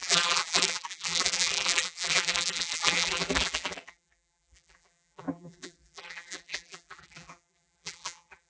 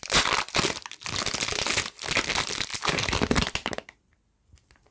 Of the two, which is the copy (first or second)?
first